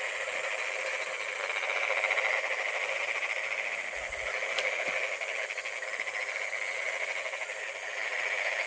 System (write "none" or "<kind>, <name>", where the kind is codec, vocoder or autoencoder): none